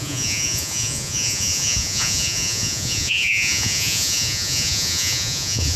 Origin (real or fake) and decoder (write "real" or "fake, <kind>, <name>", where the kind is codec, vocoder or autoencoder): fake, vocoder, Vocos